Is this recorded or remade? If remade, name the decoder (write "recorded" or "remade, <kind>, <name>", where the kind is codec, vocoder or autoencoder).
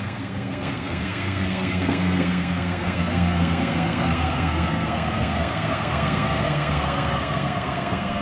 remade, codec, SNAC